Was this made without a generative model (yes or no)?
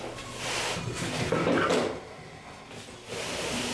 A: yes